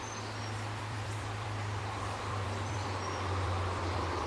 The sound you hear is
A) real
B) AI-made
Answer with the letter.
B